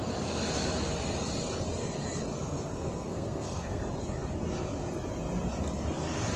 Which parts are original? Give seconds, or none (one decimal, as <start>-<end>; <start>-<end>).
0.0-2.3; 3.8-6.4